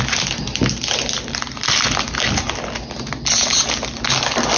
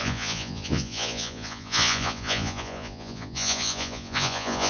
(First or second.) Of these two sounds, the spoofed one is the second